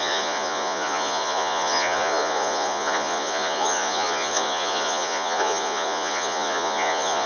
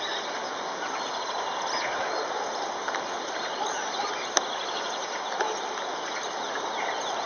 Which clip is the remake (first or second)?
first